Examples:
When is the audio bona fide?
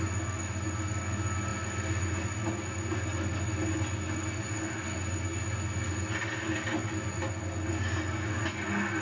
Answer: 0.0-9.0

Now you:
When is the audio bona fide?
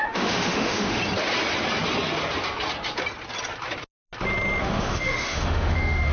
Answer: 1.0-4.6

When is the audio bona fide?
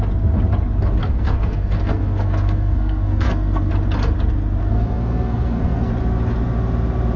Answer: 0.0-1.0; 3.7-4.6; 5.9-7.2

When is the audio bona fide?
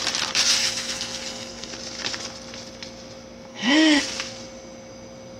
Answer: 0.0-0.6; 1.7-3.5; 4.0-5.4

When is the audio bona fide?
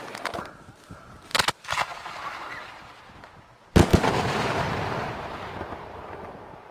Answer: 0.0-6.7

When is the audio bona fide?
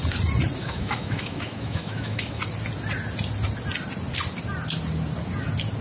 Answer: 0.0-0.6; 2.4-5.8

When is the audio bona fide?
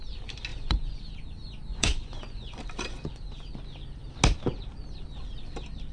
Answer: 0.0-0.5; 1.0-1.7; 2.6-5.9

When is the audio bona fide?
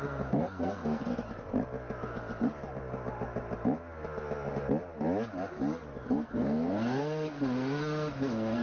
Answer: 1.1-6.1